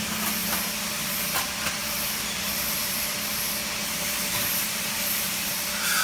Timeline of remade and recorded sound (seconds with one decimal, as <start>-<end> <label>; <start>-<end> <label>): 0.0-2.8 recorded; 2.8-5.5 remade; 5.5-6.0 recorded